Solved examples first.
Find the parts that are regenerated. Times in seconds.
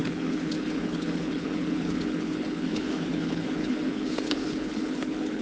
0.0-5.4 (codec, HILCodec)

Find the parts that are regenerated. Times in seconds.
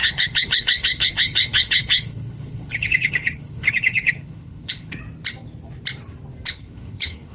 0.0-5.0 (codec, HILCodec); 6.5-7.3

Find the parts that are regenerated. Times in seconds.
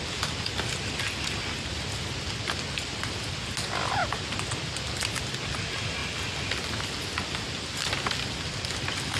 none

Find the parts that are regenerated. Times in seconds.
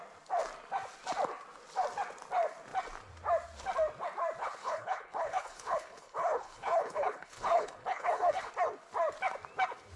4.4-8.5 (codec, HILCodec)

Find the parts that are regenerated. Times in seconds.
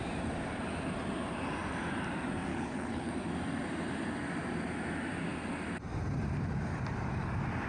2.5-3.1 (codec, HILCodec)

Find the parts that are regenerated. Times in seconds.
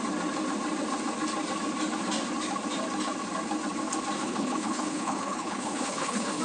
4.2-6.4 (codec, HILCodec)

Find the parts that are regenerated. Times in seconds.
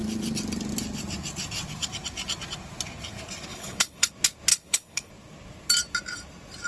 3.5-4.1 (codec, HILCodec); 4.5-5.1